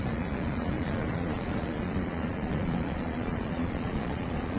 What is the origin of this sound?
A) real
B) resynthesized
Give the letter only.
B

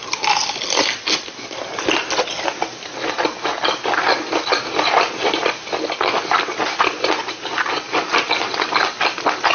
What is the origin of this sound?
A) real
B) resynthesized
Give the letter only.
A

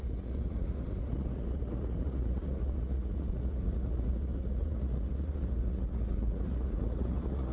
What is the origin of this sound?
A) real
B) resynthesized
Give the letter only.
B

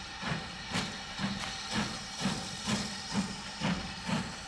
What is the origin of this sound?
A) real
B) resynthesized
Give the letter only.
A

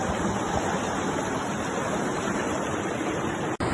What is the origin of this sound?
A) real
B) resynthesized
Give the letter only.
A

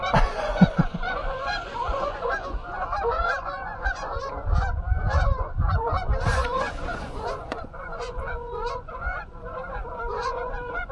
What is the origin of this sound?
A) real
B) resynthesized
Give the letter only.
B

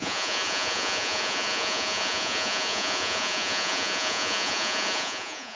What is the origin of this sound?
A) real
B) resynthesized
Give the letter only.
B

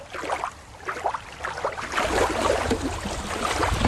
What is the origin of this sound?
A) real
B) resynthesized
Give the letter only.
A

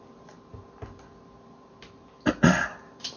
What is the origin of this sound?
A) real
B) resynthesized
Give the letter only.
A